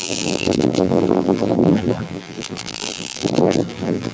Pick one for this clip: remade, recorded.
remade